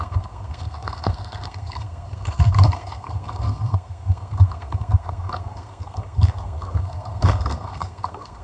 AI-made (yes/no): yes